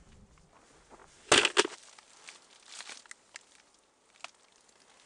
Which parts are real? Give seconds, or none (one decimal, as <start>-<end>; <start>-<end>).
0.0-5.1

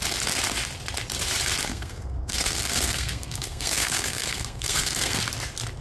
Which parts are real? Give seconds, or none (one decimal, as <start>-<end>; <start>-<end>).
0.0-1.7; 5.2-5.8

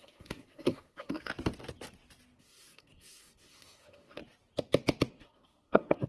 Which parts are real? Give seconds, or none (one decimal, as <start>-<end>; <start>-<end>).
1.3-2.4; 4.2-5.1